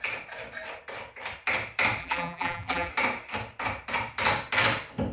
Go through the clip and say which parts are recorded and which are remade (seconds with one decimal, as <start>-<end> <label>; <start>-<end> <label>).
0.0-2.0 recorded; 2.0-2.9 remade; 2.9-5.1 recorded